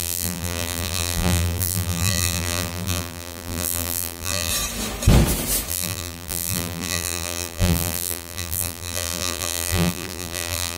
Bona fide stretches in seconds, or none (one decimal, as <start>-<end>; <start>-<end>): 4.5-5.7